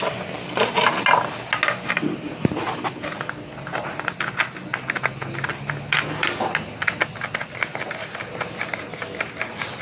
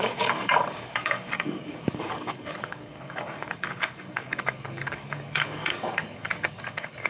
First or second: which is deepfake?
second